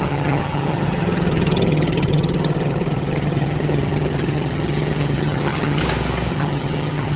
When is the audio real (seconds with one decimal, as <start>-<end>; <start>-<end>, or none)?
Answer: 5.8-6.3